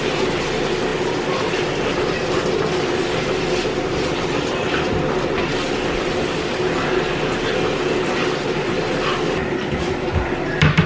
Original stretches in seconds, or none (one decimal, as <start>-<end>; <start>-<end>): 0.0-10.9